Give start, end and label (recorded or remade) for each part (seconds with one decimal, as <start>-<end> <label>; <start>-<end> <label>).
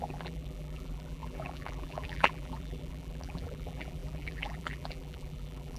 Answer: 0.0-5.8 remade